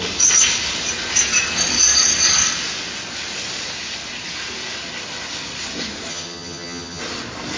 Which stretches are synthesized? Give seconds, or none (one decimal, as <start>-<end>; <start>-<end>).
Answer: 6.1-7.0